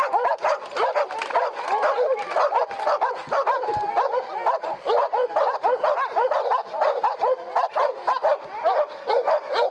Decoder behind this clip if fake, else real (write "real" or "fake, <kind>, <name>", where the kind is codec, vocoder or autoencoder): real